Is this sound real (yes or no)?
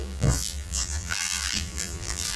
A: no